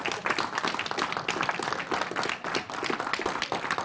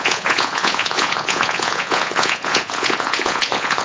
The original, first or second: first